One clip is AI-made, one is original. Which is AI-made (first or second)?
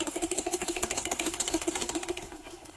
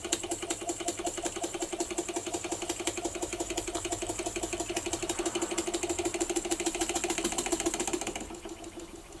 first